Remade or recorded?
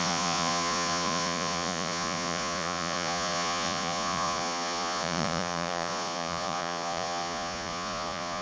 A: remade